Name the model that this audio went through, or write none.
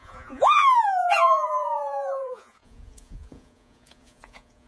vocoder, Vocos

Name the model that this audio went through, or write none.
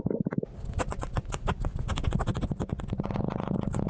none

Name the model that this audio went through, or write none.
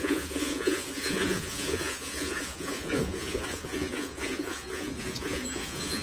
vocoder, Vocos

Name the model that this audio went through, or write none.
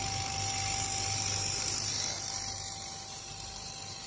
none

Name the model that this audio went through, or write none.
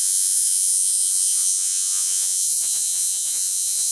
vocoder, Vocos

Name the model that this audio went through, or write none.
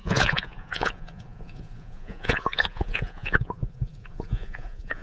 vocoder, Vocos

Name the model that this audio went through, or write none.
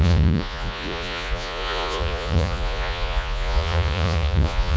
vocoder, Vocos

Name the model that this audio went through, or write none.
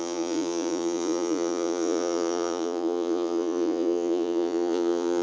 vocoder, Vocos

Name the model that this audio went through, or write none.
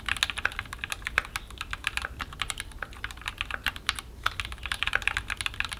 none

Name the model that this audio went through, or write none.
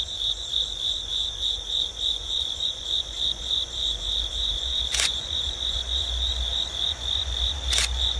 vocoder, Vocos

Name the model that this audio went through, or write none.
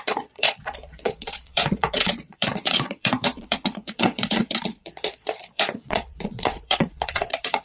vocoder, Vocos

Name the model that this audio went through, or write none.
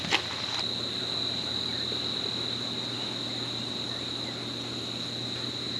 none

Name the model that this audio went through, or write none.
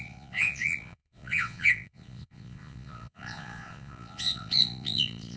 vocoder, Vocos